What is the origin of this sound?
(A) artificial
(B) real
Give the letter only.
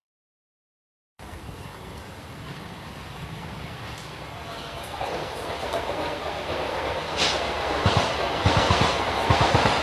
A